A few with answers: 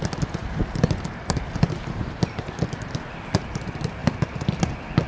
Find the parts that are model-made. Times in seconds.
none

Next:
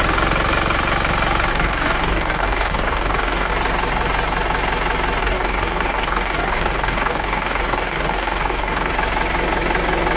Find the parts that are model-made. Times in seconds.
1.5-3.5 (codec, DAC); 5.2-8.9

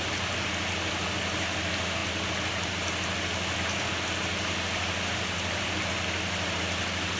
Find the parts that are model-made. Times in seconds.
none

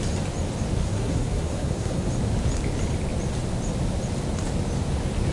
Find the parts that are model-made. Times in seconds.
0.8-2.1 (codec, SNAC)

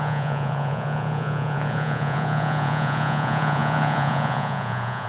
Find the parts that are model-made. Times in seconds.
0.0-5.1 (vocoder, Vocos)

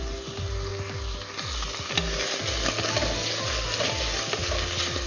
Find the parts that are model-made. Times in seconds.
none

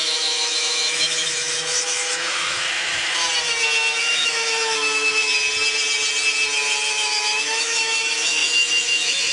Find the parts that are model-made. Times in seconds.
0.0-3.2 (autoencoder, DAC-VAE); 4.0-5.3; 6.9-9.3